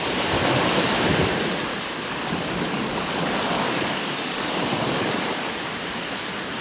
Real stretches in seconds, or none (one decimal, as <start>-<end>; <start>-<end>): 0.0-1.7; 5.5-6.6